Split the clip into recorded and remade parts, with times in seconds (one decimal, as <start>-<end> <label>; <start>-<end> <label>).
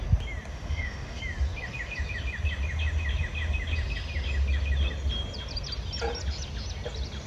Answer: 0.0-0.5 recorded; 0.5-1.2 remade; 1.2-7.3 recorded